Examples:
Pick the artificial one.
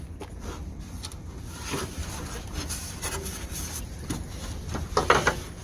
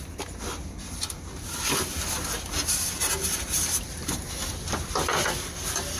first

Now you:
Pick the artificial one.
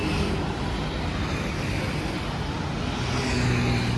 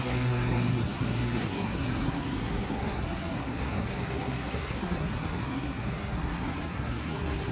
second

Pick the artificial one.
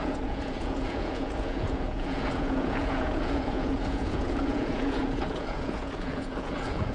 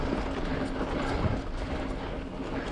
first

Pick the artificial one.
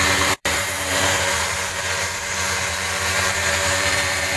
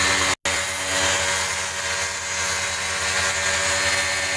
first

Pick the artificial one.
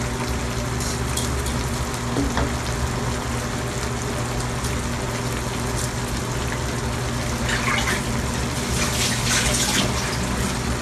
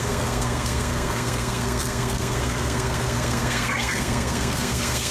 second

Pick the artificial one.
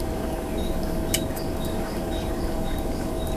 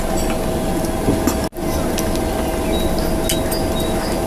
first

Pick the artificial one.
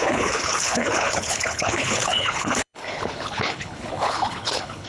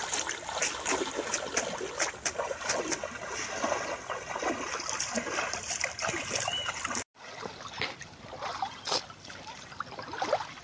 first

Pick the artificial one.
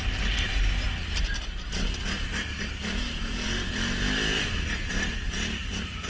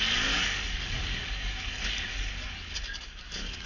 second